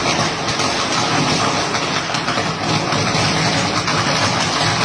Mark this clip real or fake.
real